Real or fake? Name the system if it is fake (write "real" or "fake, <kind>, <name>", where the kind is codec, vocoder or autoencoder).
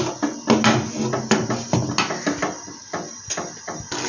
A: real